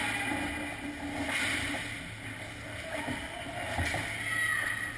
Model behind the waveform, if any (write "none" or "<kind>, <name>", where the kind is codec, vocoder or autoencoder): none